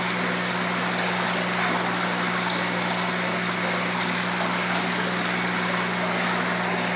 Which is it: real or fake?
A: real